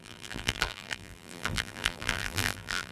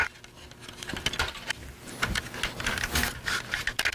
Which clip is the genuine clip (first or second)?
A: second